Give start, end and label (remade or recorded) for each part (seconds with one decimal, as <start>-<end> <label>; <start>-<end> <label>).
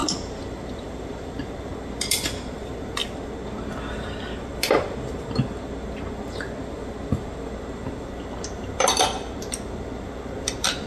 0.0-1.7 remade; 1.7-2.6 recorded; 2.6-3.0 remade; 3.0-8.0 recorded; 8.0-10.9 remade